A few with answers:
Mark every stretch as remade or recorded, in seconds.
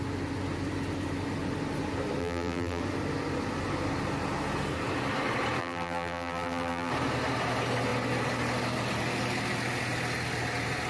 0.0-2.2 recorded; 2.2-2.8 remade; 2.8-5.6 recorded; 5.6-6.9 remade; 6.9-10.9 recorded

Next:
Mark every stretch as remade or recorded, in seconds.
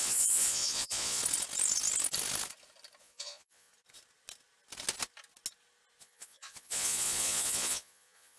0.0-1.2 remade; 1.2-3.0 recorded; 3.0-3.7 remade; 3.7-6.0 recorded; 6.0-8.4 remade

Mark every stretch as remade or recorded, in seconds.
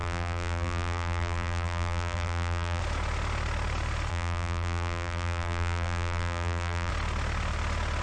0.0-2.8 remade; 2.8-4.1 recorded; 4.1-6.9 remade; 6.9-8.0 recorded